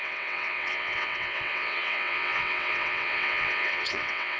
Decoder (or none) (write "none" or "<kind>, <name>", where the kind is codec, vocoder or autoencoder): vocoder, WaveNeXt